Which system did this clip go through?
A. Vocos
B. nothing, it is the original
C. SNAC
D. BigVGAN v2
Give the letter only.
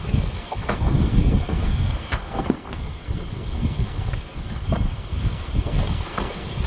C